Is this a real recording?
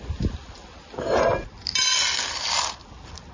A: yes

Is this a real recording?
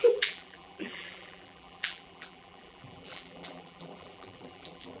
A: no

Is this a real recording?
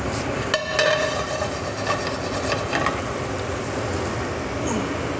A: yes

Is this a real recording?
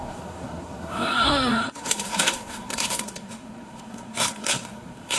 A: no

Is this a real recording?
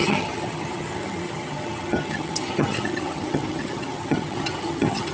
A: no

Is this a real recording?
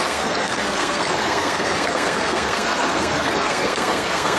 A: no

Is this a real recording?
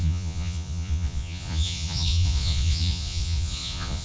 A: no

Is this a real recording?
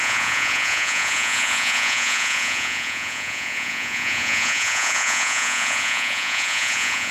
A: no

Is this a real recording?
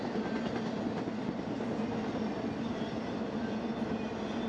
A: yes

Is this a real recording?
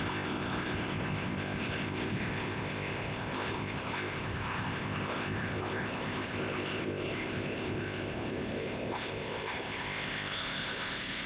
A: no